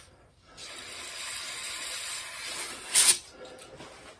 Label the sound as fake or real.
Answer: real